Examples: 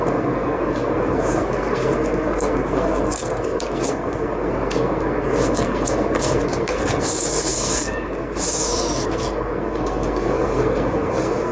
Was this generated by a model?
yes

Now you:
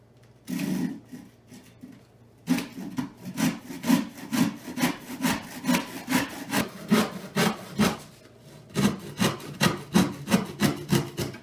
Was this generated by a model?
no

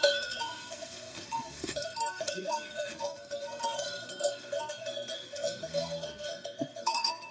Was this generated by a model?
yes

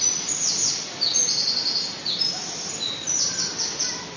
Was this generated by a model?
no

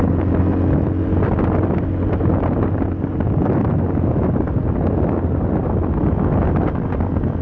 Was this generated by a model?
no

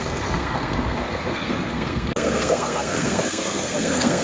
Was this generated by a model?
yes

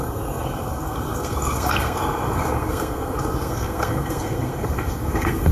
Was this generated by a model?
yes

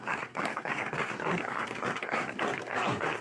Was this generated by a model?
yes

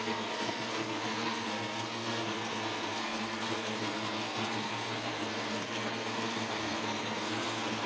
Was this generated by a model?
yes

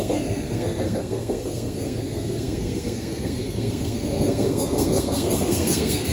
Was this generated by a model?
yes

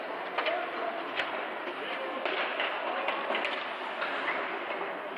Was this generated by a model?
no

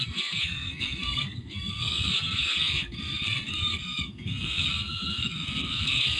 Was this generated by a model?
yes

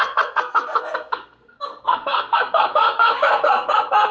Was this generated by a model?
yes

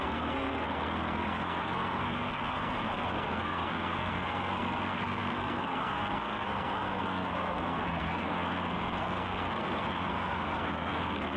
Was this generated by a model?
yes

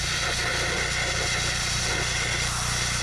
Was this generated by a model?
no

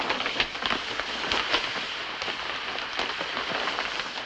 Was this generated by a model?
no